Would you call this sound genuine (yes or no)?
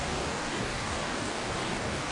no